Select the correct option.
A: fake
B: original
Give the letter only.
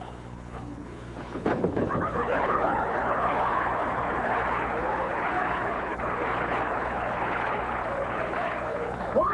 A